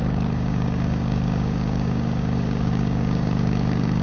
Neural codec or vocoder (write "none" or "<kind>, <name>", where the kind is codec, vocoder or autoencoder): codec, DAC